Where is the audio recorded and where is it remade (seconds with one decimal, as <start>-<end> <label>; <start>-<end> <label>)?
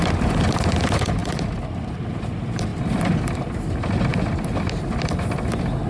0.0-4.1 recorded; 4.1-4.9 remade; 4.9-5.9 recorded